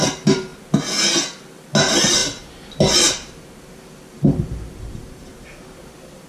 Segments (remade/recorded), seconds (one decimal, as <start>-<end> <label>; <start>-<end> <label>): 0.0-6.3 recorded